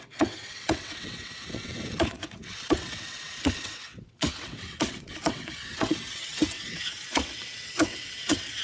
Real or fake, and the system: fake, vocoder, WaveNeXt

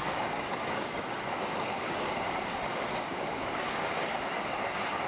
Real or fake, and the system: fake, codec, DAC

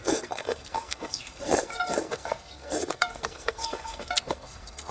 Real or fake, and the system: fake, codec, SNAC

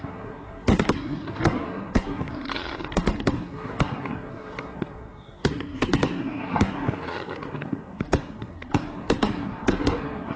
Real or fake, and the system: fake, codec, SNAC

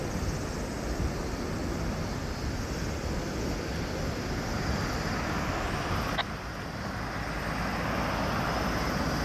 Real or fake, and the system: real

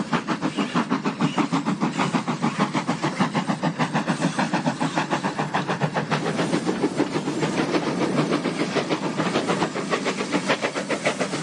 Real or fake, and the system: real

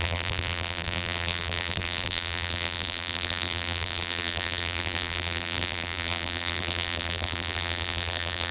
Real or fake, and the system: fake, vocoder, BigVGAN v2